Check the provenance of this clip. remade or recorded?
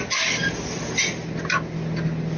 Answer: recorded